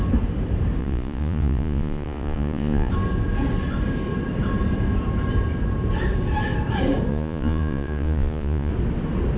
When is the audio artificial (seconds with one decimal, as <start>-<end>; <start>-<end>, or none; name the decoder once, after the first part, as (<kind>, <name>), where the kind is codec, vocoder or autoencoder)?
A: 0.8-2.9 (vocoder, Vocos); 7.1-8.7